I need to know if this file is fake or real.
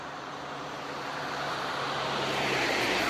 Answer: fake